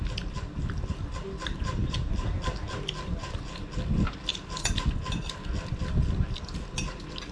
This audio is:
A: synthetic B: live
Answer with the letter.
B